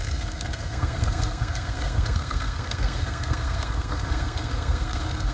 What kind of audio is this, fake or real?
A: fake